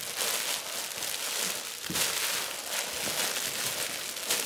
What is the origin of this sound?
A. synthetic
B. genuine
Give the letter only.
B